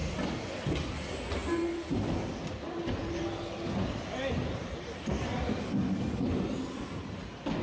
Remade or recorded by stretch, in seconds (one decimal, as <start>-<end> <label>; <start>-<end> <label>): 0.0-7.6 recorded